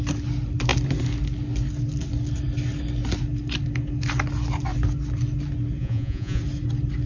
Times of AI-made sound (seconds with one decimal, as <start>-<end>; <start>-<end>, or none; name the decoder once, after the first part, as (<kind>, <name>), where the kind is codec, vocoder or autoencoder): 5.8-6.4 (vocoder, Vocos)